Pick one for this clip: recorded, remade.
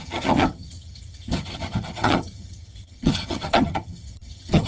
remade